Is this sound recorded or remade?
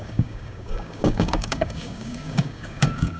remade